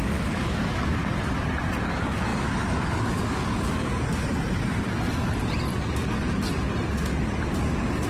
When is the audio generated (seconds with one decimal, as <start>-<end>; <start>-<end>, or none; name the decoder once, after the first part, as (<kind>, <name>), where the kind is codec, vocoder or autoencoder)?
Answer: 0.0-1.0 (codec, DAC); 1.9-3.9